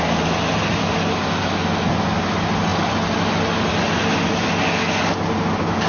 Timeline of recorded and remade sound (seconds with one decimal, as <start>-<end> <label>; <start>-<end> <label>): 0.0-5.9 recorded